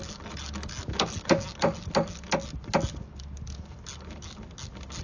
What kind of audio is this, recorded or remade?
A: recorded